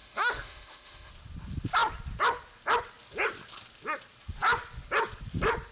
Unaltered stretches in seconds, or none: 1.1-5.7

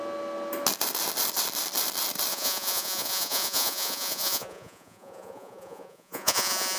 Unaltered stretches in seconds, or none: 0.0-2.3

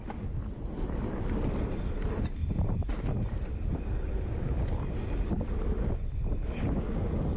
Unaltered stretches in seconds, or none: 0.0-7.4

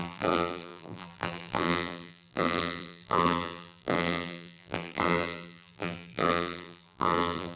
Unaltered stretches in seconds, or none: none

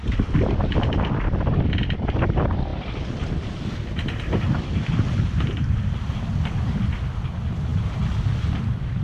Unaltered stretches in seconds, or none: 0.0-9.0

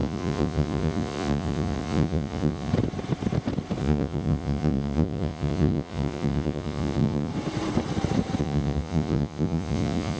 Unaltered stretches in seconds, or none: 2.7-3.8; 7.3-8.4

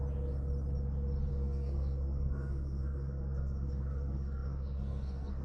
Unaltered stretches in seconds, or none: 0.0-1.3